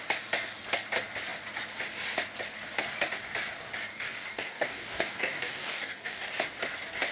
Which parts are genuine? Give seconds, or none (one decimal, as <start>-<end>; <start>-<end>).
0.0-3.9; 6.3-7.1